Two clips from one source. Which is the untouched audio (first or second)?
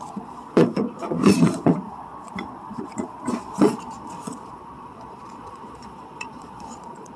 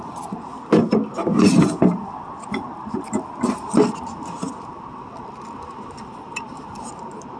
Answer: second